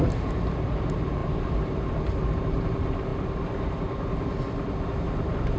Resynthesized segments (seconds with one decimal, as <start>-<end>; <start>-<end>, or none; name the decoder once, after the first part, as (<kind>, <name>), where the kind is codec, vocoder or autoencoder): none